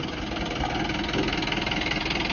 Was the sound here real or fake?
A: real